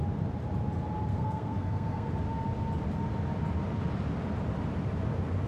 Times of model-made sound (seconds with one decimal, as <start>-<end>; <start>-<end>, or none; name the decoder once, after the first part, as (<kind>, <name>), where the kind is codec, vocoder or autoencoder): 1.1-2.1 (codec, SNAC)